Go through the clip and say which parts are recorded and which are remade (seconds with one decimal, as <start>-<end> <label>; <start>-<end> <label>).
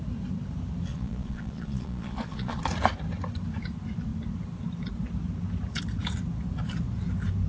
0.0-0.9 recorded; 0.9-2.6 remade; 2.6-7.5 recorded